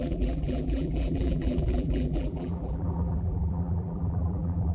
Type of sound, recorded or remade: remade